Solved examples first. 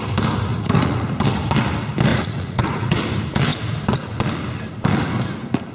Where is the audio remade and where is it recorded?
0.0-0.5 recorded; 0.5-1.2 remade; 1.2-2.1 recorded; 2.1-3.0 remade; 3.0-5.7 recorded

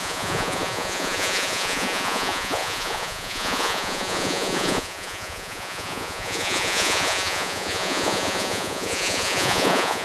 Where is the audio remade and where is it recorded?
0.0-10.0 remade

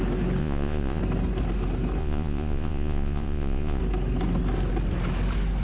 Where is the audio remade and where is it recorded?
0.0-0.4 recorded; 0.4-1.0 remade; 1.0-2.0 recorded; 2.0-3.8 remade; 3.8-5.6 recorded

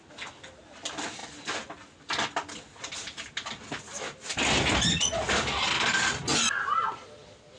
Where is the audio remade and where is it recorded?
0.0-7.6 recorded

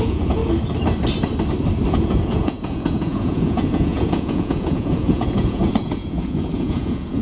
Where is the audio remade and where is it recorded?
0.0-0.4 remade; 0.4-1.9 recorded; 1.9-7.2 remade

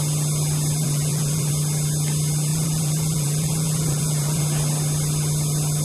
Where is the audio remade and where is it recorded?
0.0-0.8 recorded; 0.8-1.5 remade; 1.5-2.5 recorded; 2.5-4.4 remade; 4.4-5.8 recorded

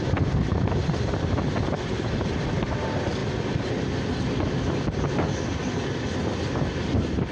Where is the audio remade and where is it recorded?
0.0-7.3 recorded

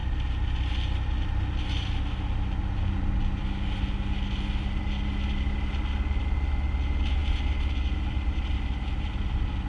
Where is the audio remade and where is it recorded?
0.0-9.7 recorded